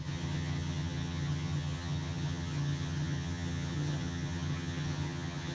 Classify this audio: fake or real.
fake